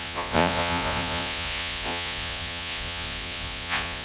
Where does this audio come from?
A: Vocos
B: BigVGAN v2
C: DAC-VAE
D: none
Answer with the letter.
A